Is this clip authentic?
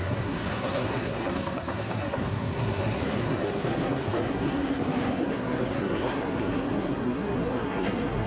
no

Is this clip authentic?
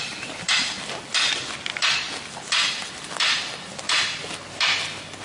yes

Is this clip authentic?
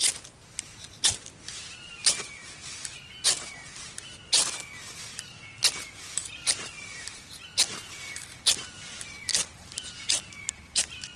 yes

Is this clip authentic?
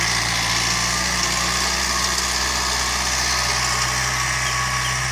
yes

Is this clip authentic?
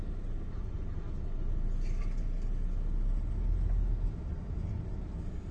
yes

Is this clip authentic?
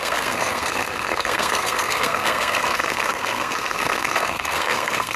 no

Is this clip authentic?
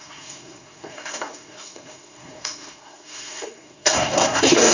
no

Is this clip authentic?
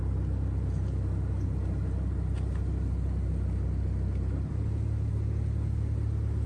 yes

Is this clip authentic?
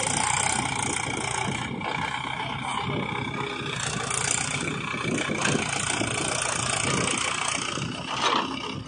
yes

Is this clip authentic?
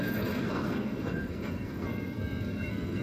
no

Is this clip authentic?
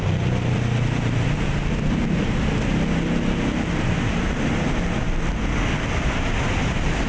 yes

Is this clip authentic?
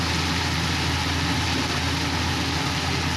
yes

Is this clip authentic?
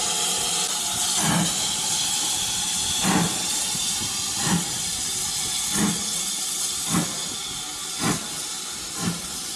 yes